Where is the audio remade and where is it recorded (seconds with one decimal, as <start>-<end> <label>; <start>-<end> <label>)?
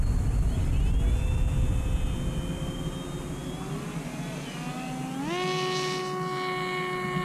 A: 0.0-7.2 recorded